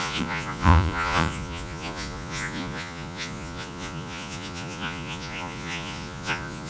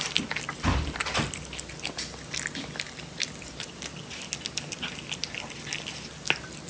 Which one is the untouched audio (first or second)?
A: second